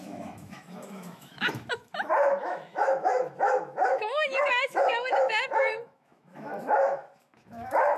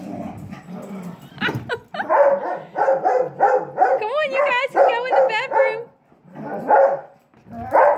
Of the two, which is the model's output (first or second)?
first